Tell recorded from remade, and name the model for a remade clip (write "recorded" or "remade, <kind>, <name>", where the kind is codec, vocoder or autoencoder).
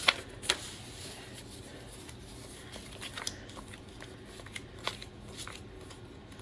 recorded